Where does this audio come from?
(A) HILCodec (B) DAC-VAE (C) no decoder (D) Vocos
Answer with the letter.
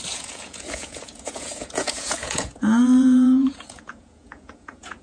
D